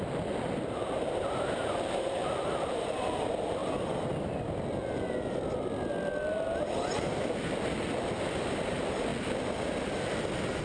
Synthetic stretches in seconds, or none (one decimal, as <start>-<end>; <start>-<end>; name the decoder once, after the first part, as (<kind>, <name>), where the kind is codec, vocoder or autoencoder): 0.0-3.6 (vocoder, BigVGAN v2); 8.3-9.1